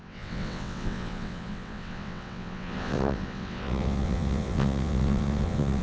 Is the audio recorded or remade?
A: remade